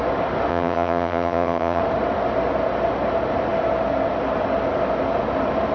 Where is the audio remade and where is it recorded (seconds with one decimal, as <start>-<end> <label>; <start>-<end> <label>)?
0.0-0.5 recorded; 0.5-1.8 remade; 1.8-5.7 recorded